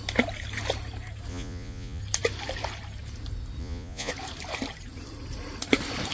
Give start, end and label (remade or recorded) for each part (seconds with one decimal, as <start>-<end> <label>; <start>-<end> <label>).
0.0-1.3 recorded; 1.3-2.0 remade; 2.0-3.6 recorded; 3.6-4.1 remade; 4.1-6.1 recorded

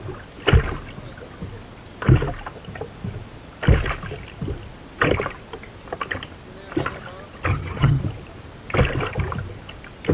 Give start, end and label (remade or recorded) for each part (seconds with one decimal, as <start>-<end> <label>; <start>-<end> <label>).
0.0-7.5 recorded; 7.5-8.0 remade; 8.0-10.1 recorded

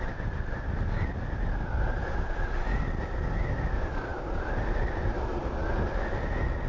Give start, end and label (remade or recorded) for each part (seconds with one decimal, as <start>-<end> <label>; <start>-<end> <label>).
0.0-6.7 recorded